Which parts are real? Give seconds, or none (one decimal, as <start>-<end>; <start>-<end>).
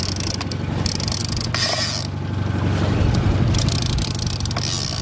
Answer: 0.0-5.0